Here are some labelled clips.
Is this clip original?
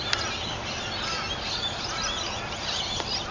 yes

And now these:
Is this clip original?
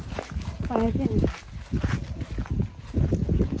yes